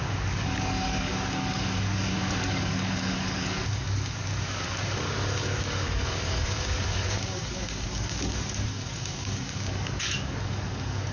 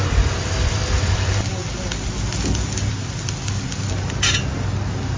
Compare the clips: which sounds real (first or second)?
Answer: second